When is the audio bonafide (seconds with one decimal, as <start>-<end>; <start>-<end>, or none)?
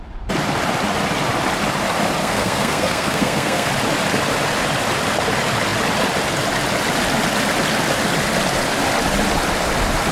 0.0-2.2; 3.7-10.1